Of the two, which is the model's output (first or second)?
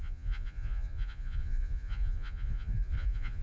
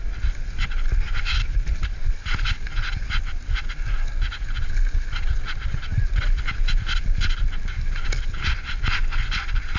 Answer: first